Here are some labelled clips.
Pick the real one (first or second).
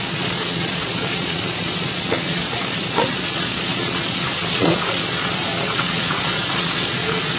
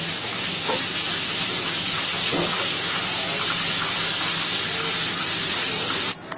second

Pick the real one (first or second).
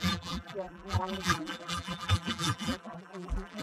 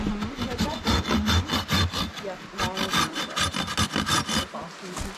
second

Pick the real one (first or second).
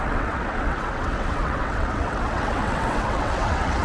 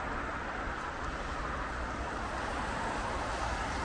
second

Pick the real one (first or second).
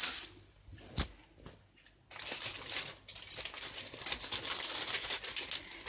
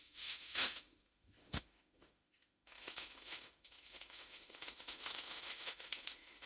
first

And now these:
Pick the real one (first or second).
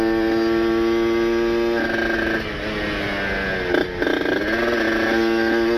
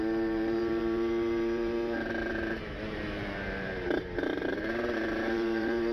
first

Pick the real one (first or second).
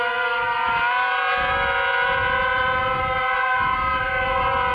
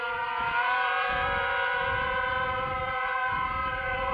first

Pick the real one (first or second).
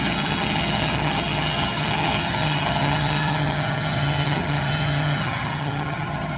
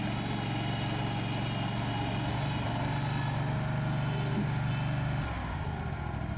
second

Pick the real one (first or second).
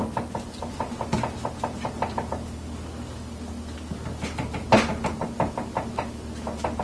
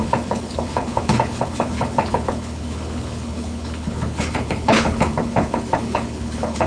first